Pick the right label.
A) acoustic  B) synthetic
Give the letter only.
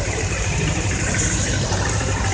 B